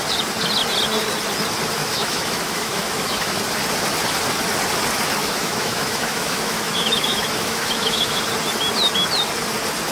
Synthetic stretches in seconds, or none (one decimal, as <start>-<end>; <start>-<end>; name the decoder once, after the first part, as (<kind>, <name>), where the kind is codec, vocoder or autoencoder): 1.8-3.4 (autoencoder, DAC-VAE); 5.2-8.2